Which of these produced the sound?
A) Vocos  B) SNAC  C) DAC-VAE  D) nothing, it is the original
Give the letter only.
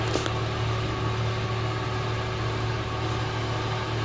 D